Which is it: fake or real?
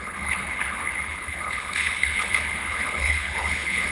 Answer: fake